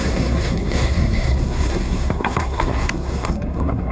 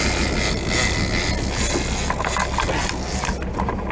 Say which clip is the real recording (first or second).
second